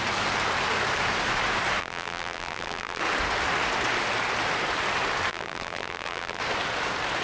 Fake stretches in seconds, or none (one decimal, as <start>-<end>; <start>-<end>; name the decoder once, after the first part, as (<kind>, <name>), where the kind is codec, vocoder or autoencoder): 1.8-3.0 (vocoder, BigVGAN v2); 5.3-6.4